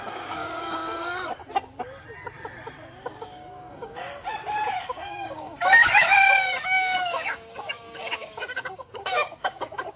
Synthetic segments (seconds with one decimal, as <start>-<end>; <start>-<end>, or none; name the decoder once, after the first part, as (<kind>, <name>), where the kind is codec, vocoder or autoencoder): 0.0-1.4 (codec, DAC); 3.0-4.1; 4.8-10.0